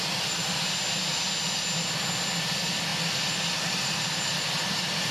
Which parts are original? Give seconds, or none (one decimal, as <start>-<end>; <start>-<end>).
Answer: 0.4-2.4; 2.9-3.5